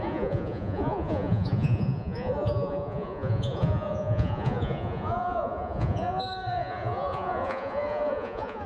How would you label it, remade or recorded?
remade